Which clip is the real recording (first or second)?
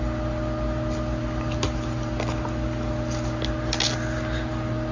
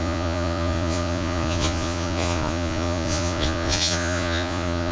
first